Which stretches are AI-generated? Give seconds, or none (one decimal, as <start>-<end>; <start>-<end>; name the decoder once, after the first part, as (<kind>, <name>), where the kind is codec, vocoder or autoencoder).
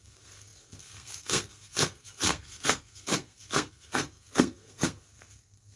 0.0-5.8 (codec, SNAC)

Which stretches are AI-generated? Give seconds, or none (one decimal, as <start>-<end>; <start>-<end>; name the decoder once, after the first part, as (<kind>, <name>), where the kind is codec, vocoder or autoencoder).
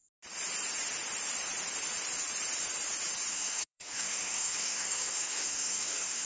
3.3-6.3 (codec, SNAC)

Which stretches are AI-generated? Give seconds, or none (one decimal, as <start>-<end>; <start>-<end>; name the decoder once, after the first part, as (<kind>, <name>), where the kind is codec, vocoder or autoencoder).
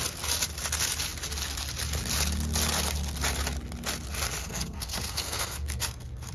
4.4-6.3 (codec, SNAC)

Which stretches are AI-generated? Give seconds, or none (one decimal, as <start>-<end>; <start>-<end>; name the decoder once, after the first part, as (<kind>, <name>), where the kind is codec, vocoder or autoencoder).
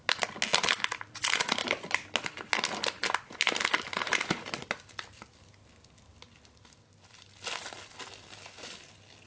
none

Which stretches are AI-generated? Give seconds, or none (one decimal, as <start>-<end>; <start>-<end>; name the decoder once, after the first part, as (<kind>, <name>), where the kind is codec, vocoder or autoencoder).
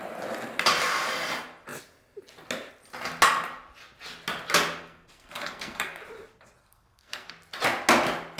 4.8-6.0 (codec, SNAC); 6.6-7.3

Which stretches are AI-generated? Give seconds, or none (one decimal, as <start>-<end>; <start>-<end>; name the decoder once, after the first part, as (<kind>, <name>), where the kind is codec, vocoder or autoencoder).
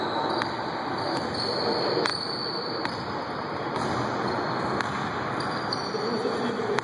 none